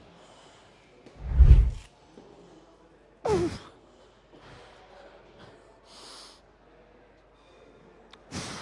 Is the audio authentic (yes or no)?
yes